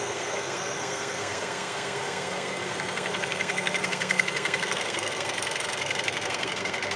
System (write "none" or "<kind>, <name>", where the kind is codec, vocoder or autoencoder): codec, SNAC